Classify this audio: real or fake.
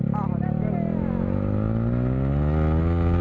real